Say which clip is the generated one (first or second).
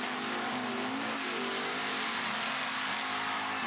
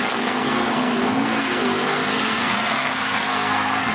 second